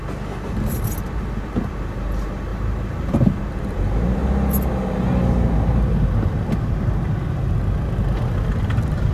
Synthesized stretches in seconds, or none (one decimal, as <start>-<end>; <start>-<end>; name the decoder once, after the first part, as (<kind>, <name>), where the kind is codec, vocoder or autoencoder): 2.5-3.4 (vocoder, BigVGAN v2)